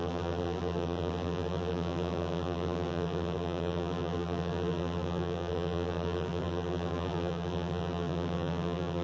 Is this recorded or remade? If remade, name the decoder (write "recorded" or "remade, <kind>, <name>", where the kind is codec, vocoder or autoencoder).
remade, vocoder, BigVGAN v2